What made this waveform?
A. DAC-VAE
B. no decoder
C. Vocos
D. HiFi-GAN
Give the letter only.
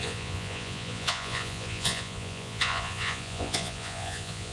C